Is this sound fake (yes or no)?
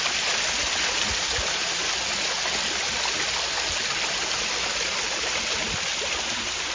no